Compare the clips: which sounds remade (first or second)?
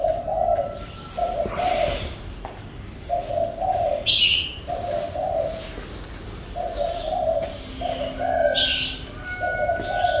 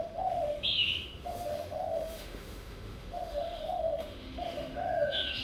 second